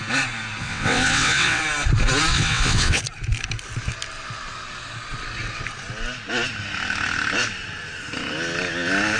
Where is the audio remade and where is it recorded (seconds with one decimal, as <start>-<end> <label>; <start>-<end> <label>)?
0.0-0.6 recorded; 0.6-1.6 remade; 1.6-2.3 recorded; 2.3-3.0 remade; 3.0-9.2 recorded